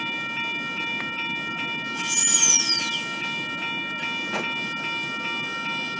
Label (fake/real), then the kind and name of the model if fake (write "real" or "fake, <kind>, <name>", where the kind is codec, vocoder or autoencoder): real